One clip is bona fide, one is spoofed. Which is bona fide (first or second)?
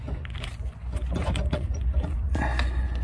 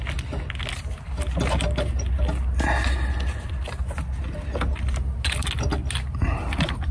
second